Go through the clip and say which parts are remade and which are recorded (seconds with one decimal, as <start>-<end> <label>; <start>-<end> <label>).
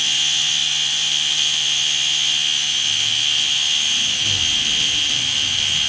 0.0-5.9 recorded